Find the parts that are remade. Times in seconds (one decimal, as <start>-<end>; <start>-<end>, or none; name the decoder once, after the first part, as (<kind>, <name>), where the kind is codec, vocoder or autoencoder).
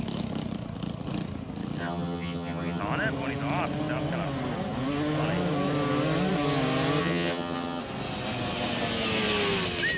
1.8-2.8 (vocoder, HiFi-GAN); 7.0-7.8